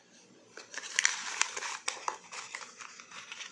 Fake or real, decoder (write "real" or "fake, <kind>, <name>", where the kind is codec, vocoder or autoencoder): fake, vocoder, BigVGAN v2